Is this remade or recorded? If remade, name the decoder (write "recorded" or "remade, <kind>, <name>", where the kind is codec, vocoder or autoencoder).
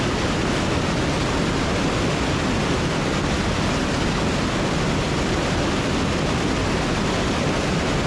recorded